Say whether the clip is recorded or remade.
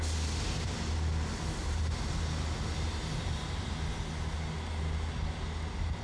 recorded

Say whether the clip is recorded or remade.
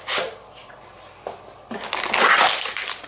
recorded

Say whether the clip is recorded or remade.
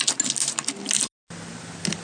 recorded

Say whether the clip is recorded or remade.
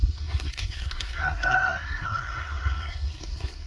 remade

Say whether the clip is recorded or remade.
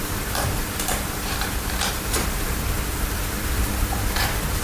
remade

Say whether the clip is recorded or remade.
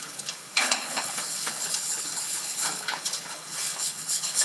remade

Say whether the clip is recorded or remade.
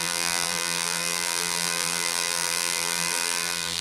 remade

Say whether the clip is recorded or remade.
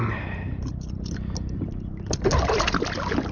recorded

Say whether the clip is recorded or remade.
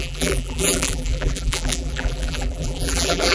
remade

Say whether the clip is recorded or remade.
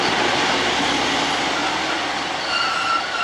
recorded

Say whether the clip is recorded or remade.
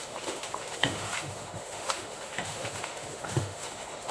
remade